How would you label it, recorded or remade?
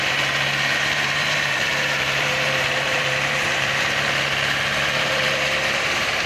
remade